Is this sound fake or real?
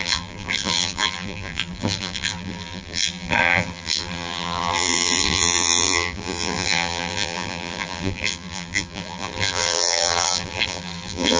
fake